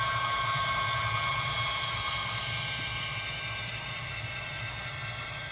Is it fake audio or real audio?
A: real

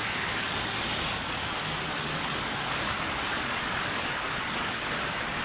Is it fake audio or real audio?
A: fake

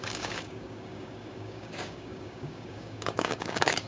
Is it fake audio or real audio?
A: fake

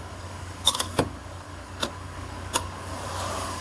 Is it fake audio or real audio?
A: fake